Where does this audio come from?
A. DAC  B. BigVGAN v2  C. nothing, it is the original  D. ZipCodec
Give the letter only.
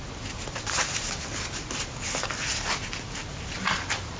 C